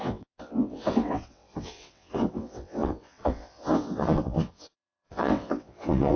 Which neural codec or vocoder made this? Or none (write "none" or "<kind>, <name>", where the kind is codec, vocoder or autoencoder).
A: vocoder, WaveNeXt